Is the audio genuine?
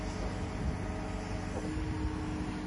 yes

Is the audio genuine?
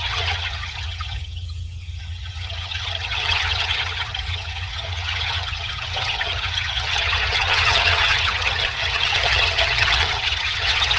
no